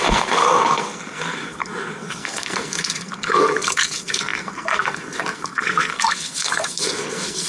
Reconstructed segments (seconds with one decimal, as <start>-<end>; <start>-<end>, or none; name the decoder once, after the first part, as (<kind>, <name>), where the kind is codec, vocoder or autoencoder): 0.0-7.5 (codec, SNAC)